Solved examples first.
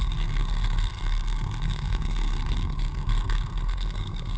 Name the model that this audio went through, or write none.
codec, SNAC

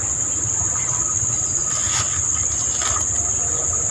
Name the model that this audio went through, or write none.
none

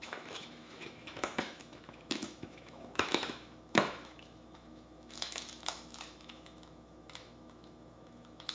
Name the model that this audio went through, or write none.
autoencoder, DAC-VAE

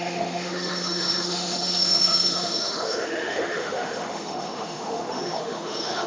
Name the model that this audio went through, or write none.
autoencoder, DAC-VAE